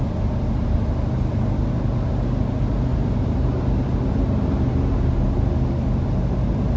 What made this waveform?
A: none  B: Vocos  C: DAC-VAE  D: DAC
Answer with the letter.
A